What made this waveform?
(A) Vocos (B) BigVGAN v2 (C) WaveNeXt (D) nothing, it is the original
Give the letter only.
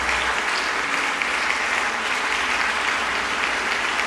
D